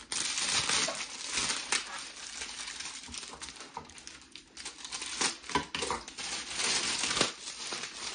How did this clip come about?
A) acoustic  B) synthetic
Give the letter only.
A